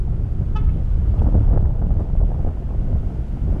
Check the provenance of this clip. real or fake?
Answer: real